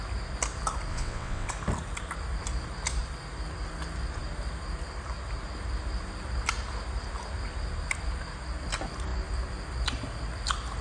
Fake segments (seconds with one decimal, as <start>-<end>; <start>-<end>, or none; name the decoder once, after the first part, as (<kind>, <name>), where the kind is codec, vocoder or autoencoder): 0.9-1.5 (vocoder, WaveNeXt)